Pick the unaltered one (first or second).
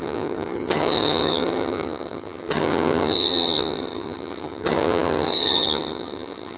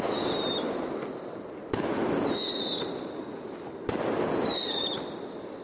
second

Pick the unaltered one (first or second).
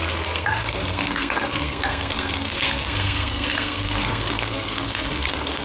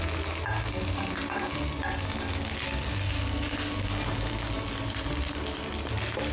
second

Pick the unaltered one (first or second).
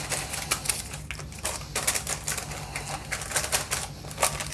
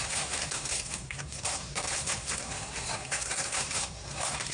first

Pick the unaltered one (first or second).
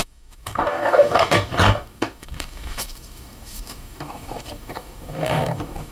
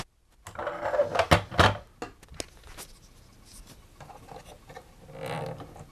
second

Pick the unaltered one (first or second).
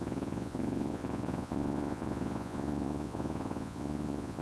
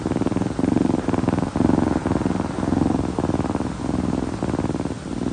second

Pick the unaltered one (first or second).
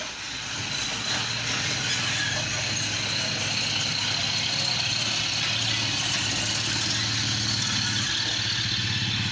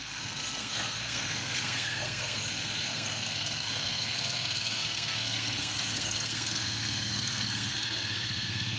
first